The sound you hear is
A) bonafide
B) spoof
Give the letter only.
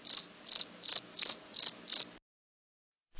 A